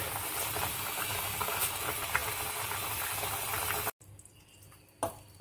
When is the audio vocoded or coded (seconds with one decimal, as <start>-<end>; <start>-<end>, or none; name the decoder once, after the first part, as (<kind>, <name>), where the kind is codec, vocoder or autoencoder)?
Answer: 0.7-1.8 (codec, DAC)